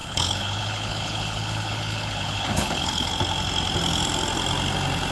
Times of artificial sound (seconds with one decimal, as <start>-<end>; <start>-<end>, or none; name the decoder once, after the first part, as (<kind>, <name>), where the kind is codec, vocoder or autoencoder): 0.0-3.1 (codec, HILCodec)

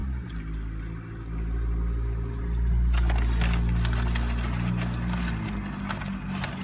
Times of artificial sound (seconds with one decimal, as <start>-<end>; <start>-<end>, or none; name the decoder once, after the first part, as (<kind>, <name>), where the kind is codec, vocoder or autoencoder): none

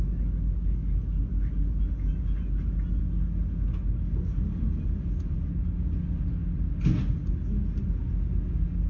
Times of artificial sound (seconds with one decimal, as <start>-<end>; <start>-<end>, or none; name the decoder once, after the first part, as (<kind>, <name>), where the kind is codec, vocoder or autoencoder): none